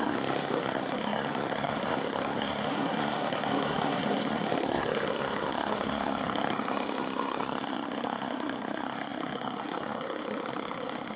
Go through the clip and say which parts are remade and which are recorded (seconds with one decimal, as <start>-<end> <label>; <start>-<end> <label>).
0.0-11.2 remade